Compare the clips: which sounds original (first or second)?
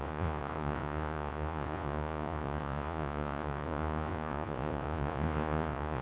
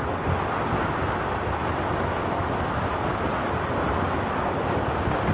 second